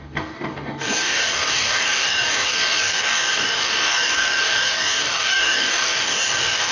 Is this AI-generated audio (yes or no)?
yes